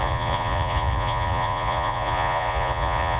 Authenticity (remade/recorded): remade